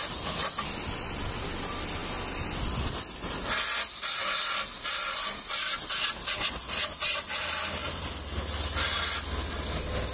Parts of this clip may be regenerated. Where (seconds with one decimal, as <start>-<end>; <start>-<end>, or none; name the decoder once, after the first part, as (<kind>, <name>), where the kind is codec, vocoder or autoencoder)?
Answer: none